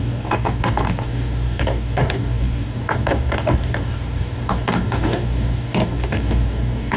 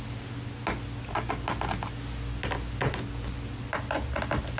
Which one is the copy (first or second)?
first